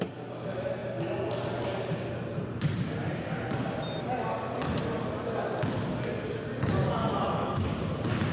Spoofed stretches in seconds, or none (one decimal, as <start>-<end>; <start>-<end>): 7.0-7.7